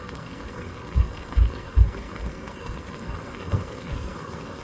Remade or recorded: remade